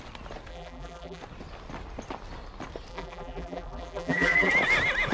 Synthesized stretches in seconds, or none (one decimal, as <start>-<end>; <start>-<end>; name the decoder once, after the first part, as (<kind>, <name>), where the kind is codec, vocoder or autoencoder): 0.5-1.2 (vocoder, BigVGAN v2); 2.9-4.5